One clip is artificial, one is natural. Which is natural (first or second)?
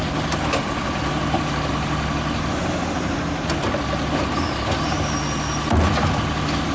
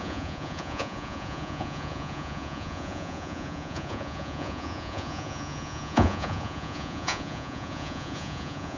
first